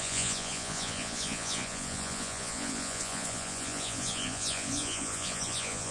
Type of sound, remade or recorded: remade